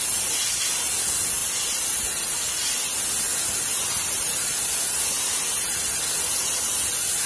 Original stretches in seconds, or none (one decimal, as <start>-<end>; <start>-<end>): 0.0-7.3